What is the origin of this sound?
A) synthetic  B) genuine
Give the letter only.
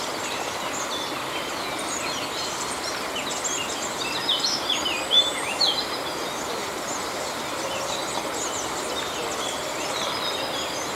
B